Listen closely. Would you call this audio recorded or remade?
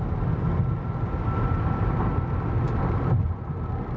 recorded